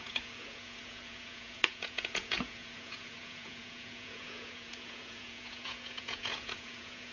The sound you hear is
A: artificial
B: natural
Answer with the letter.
A